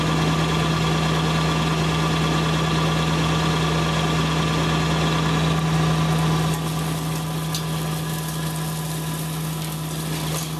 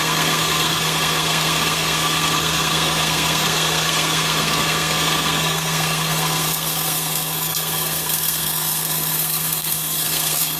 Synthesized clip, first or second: second